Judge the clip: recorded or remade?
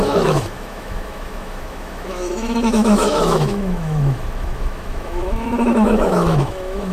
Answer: remade